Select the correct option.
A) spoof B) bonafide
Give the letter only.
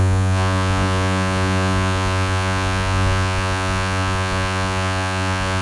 A